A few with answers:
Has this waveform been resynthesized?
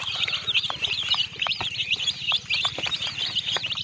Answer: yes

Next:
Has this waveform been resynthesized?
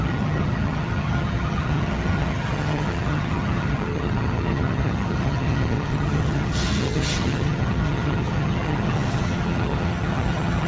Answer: yes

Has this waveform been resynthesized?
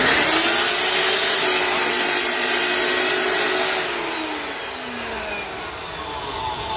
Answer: no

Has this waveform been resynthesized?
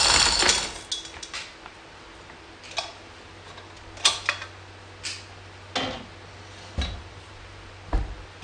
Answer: no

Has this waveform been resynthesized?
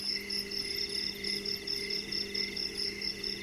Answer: no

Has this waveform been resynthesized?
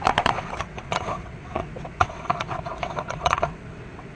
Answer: yes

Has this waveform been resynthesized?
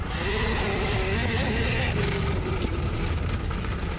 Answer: no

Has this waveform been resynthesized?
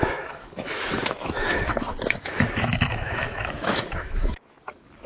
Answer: yes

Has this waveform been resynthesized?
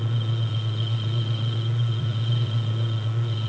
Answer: yes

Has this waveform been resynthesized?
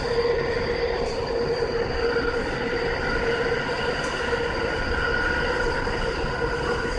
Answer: no